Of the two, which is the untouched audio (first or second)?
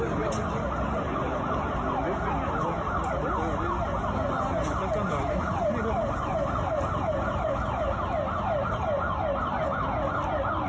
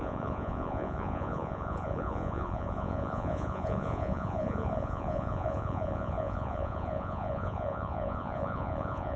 first